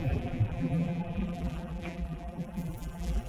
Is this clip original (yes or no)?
no